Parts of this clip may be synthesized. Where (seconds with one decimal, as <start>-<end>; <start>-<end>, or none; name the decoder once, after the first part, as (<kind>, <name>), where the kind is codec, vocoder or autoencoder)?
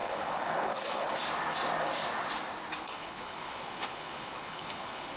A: 0.0-1.1 (codec, HILCodec); 2.8-5.2